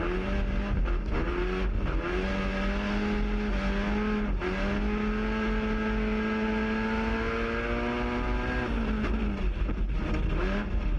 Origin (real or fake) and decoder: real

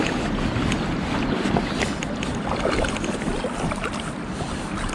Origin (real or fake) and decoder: real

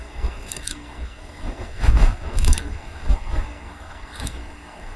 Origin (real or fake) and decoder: fake, codec, SNAC